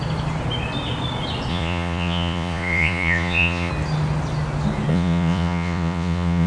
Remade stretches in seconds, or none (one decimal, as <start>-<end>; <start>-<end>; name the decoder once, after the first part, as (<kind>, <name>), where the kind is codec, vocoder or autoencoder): 1.5-3.7 (vocoder, Vocos); 4.9-6.5